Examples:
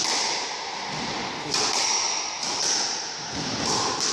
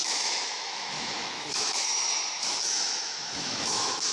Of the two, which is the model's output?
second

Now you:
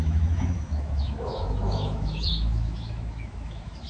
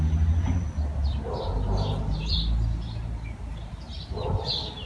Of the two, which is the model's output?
first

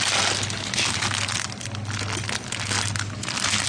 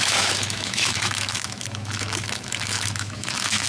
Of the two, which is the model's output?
second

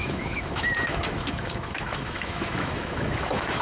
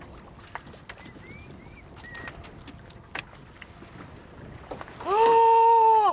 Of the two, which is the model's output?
first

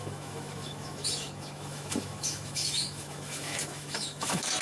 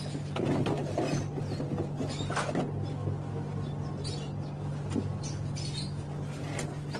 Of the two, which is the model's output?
first